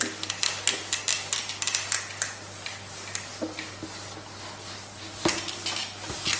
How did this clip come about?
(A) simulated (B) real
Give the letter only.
B